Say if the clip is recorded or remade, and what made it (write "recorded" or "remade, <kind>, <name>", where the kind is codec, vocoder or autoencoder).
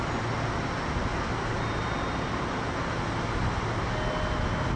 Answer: recorded